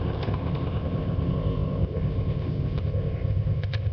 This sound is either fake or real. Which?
fake